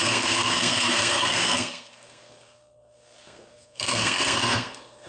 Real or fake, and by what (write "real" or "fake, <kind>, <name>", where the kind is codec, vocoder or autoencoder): fake, codec, SNAC